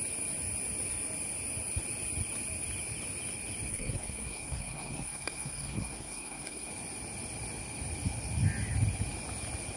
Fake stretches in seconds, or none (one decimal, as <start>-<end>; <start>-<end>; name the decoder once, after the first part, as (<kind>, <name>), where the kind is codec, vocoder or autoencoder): 3.7-6.7 (codec, SNAC)